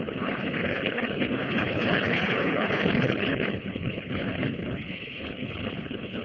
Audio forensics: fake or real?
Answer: fake